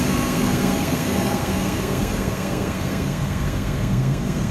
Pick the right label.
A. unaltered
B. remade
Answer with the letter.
B